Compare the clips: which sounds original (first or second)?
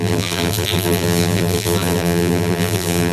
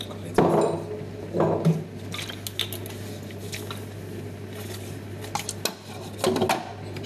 second